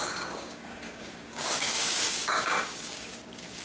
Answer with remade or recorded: remade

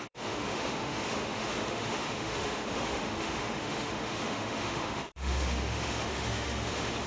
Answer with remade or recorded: remade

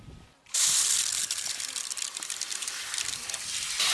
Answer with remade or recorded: recorded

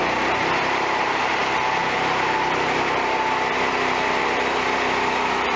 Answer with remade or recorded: recorded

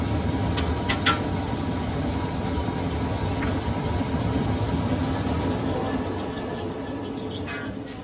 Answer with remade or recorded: recorded